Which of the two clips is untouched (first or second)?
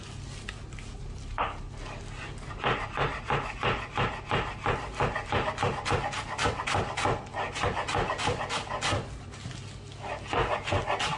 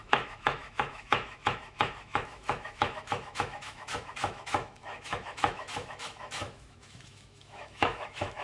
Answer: first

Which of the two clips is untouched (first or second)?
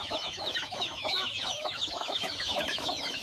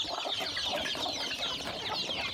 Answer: second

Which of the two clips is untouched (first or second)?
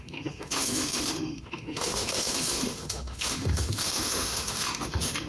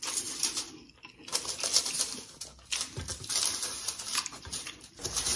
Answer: second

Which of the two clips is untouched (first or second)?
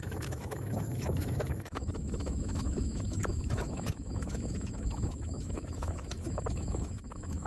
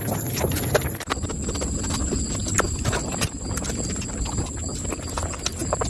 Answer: second